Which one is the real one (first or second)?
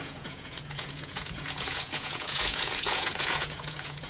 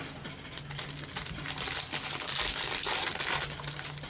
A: second